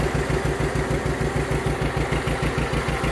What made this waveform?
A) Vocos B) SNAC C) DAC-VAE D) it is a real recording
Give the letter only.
D